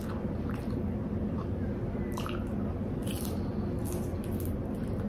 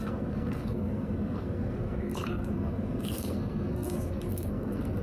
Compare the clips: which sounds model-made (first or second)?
second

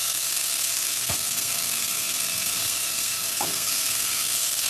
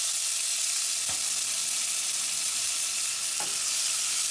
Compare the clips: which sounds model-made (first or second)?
first